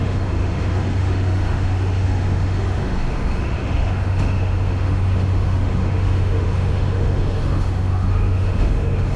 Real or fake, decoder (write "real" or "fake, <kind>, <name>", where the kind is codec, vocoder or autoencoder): fake, autoencoder, DAC-VAE